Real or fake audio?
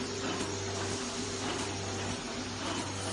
real